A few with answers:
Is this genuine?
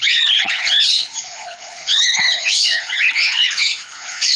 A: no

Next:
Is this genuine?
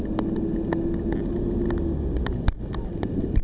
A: yes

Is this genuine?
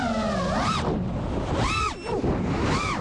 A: yes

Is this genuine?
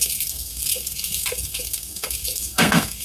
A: no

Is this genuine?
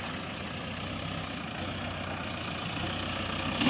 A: yes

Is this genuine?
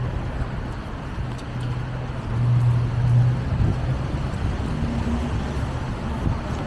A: yes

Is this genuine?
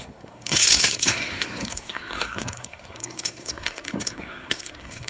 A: no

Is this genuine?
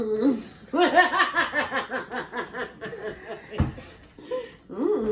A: yes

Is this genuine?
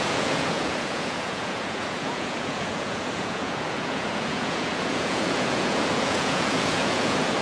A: no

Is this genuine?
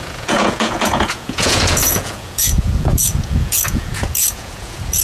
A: no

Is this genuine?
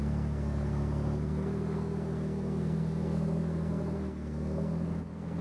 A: no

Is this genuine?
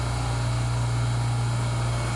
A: yes